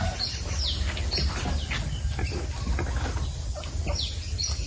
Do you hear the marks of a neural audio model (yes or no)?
no